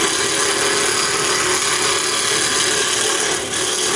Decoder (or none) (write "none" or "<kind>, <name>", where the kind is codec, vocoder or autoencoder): none